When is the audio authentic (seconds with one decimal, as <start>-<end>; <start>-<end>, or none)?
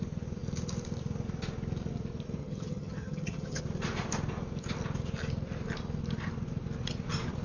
0.0-2.4; 3.6-7.4